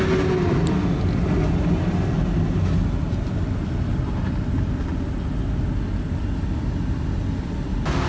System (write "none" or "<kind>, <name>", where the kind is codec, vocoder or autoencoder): none